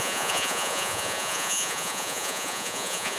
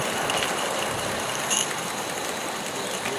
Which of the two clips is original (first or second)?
second